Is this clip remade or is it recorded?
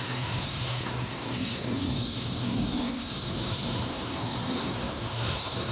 remade